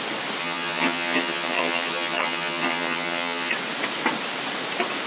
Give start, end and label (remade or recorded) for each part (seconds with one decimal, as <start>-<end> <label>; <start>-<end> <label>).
0.0-0.4 recorded; 0.4-3.5 remade; 3.5-5.1 recorded